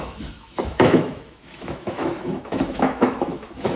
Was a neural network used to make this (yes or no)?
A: yes